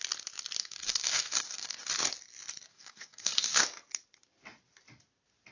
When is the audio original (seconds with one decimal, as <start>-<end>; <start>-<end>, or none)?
0.0-0.6; 1.9-2.7; 3.6-5.5